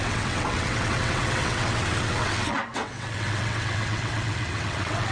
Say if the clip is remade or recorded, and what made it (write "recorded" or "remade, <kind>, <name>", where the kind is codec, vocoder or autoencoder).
remade, vocoder, WaveNeXt